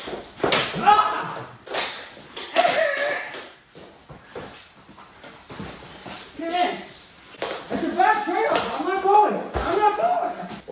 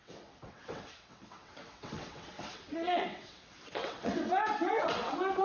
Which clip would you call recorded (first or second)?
first